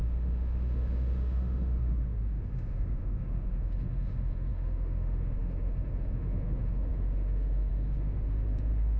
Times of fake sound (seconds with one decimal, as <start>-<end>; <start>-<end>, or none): 0.0-9.0